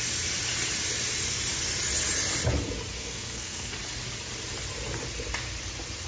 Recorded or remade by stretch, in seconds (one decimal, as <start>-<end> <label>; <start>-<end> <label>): 0.0-3.0 recorded; 3.0-3.7 remade; 3.7-6.1 recorded

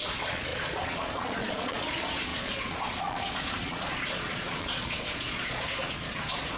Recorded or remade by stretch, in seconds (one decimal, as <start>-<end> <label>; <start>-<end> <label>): 0.0-6.6 remade

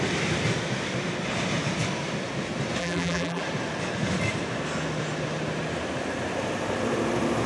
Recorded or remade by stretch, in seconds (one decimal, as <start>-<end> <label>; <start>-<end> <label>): 0.0-2.8 recorded; 2.8-3.4 remade; 3.4-7.5 recorded

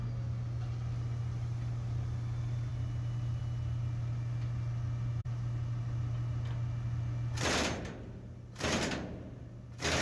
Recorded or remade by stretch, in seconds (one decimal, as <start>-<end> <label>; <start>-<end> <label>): 0.0-10.0 recorded

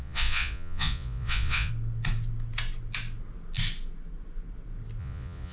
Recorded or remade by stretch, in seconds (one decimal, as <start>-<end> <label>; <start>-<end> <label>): 0.0-1.7 remade; 1.7-5.0 recorded; 5.0-5.5 remade

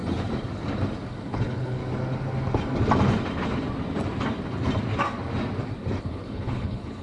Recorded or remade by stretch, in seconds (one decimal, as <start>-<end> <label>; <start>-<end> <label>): 0.0-1.3 recorded; 1.3-1.8 remade; 1.8-6.0 recorded; 6.0-7.0 remade